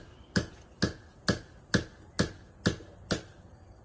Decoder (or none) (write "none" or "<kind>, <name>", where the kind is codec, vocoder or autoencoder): none